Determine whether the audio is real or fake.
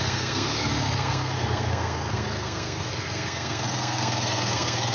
fake